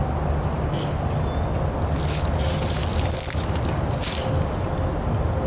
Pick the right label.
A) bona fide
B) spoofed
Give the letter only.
A